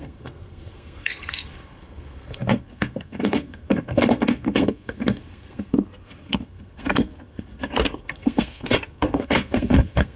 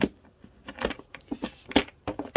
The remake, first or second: first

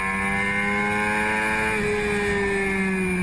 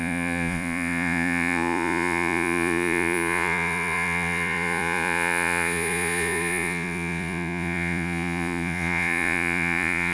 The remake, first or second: second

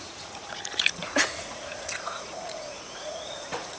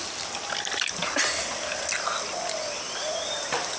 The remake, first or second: first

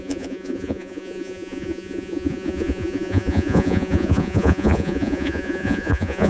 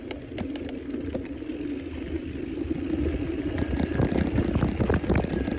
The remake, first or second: first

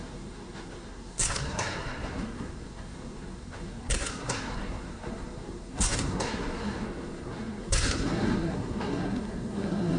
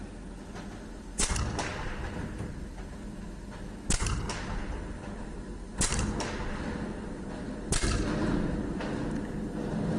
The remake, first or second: first